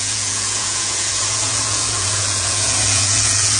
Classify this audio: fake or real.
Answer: fake